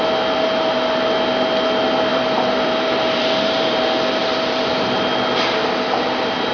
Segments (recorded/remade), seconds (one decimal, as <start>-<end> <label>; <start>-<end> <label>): 0.0-2.1 recorded; 2.1-3.7 remade; 3.7-4.2 recorded; 4.2-4.7 remade; 4.7-6.5 recorded